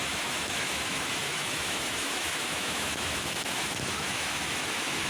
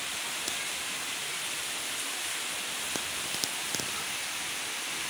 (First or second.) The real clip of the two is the second